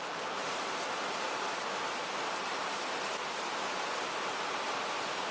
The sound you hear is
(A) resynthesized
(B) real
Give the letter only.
B